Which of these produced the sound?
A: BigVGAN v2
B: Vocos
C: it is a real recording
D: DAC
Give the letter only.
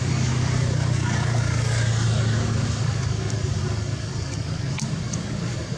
D